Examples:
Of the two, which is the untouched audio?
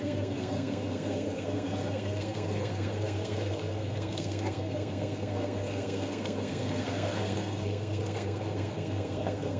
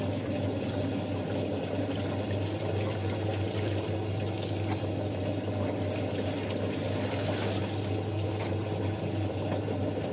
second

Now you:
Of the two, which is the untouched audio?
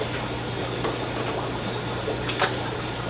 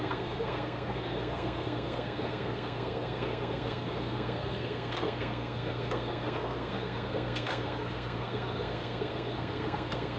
first